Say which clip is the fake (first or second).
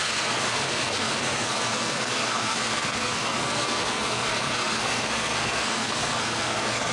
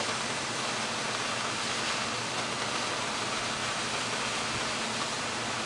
first